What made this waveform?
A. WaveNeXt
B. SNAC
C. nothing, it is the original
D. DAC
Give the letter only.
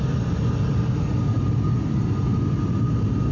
C